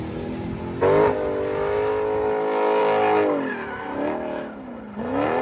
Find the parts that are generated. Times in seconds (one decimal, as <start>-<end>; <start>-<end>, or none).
none